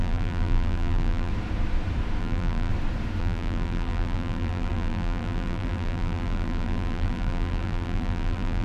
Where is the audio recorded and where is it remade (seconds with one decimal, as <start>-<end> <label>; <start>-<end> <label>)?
0.0-1.3 remade; 1.3-2.2 recorded; 2.2-2.7 remade; 2.7-3.2 recorded; 3.2-8.6 remade